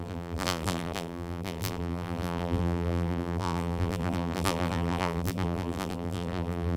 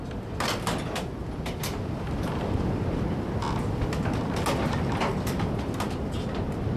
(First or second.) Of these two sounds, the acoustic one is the second